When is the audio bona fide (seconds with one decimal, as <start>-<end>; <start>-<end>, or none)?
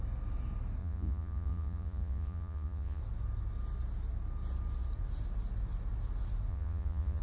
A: 0.0-0.8; 3.0-6.5